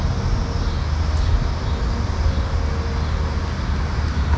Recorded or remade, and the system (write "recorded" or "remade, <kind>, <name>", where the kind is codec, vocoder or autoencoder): recorded